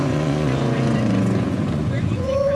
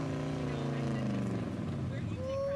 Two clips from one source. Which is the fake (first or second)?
first